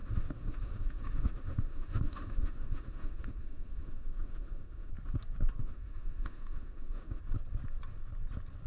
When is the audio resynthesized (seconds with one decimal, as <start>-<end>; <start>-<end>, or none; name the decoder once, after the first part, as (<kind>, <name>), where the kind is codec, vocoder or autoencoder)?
0.0-4.9 (autoencoder, DAC-VAE); 5.6-7.2